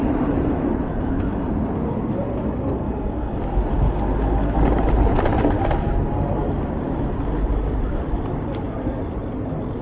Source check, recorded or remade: recorded